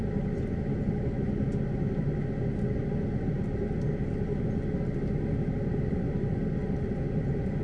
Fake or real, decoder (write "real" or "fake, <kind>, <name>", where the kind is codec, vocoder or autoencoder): real